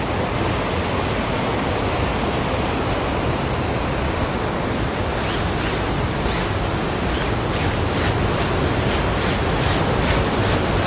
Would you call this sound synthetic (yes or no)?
no